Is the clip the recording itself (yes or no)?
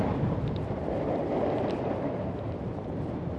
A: yes